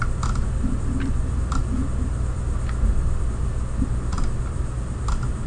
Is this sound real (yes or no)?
yes